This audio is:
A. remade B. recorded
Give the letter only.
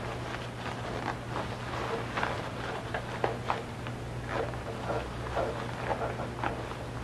B